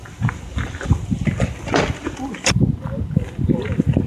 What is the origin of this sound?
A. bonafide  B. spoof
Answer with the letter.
A